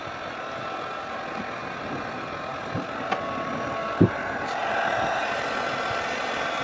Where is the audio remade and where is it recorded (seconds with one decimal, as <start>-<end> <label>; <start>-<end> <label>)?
0.0-6.6 recorded